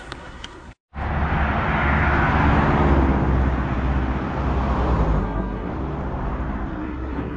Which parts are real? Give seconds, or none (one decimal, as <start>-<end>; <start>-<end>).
0.8-5.2; 5.7-6.7